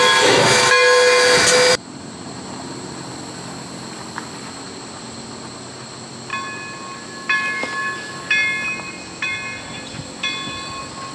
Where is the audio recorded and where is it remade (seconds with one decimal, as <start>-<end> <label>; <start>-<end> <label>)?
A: 0.0-1.7 recorded; 1.7-2.9 remade; 2.9-11.1 recorded